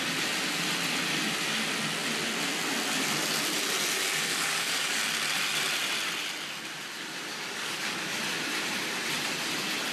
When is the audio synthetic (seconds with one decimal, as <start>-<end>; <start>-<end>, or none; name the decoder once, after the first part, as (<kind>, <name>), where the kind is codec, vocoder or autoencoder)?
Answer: 4.3-5.0 (codec, DAC); 7.3-8.2